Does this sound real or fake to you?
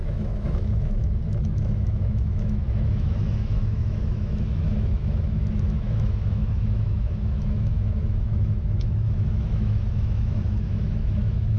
fake